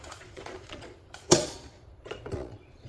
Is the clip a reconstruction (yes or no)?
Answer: yes